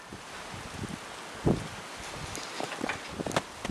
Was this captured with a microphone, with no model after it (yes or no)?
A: yes